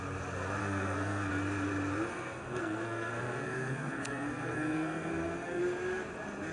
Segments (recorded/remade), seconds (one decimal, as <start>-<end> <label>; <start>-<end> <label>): 0.0-0.6 recorded; 0.6-1.3 remade; 1.3-2.1 recorded; 2.1-5.6 remade; 5.6-6.5 recorded